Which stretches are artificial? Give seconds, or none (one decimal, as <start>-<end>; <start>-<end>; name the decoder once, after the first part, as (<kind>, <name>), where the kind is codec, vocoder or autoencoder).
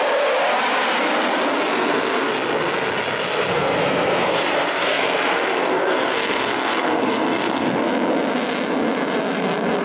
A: 1.7-2.3 (codec, SNAC); 3.5-4.3; 4.8-7.8